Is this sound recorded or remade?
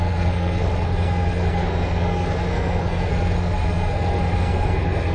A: remade